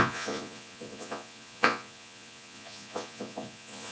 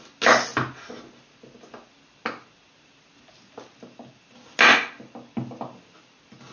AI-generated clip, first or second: first